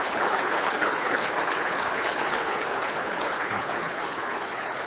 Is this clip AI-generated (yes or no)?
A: yes